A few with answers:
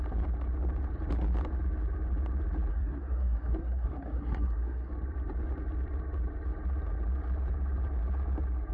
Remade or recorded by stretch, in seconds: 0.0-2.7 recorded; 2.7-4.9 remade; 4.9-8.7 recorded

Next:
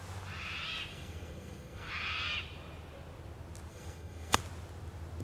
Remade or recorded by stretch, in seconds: 0.0-0.9 recorded; 0.9-1.9 remade; 1.9-3.7 recorded; 3.7-4.4 remade; 4.4-5.2 recorded

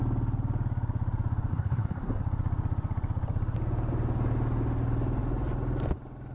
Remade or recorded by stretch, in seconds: 0.0-1.5 recorded; 1.5-2.2 remade; 2.2-6.3 recorded